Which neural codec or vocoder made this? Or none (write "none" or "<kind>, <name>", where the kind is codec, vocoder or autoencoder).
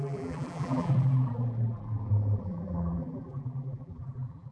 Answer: vocoder, BigVGAN v2